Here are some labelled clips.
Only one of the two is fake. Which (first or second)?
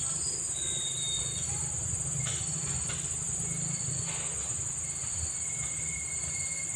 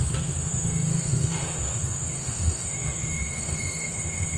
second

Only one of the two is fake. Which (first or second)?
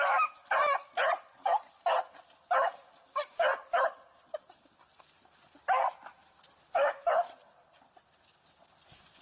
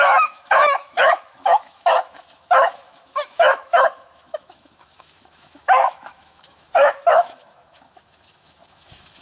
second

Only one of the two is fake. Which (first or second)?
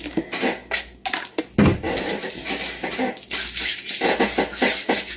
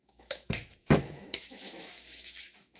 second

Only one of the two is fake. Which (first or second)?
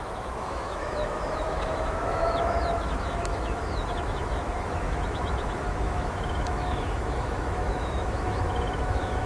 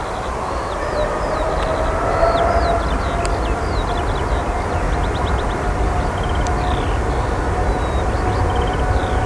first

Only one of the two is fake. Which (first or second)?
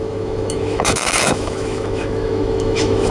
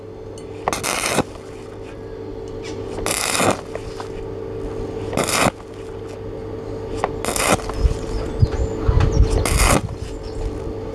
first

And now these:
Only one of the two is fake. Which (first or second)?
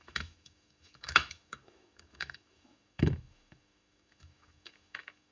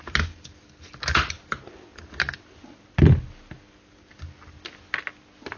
first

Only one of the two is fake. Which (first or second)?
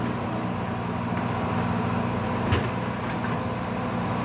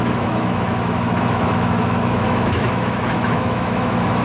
second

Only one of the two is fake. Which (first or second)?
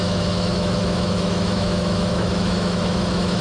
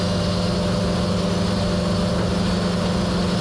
first